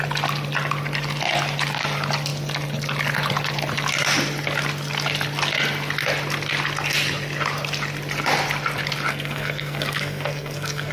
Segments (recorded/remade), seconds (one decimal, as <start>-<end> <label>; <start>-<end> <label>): 0.0-9.1 recorded; 9.1-10.9 remade